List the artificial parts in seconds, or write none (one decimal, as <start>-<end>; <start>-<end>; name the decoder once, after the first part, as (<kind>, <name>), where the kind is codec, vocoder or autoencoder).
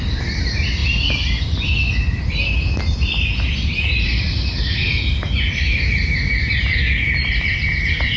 none